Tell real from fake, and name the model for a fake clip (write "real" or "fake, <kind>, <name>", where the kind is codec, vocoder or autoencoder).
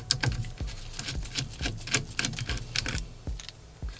real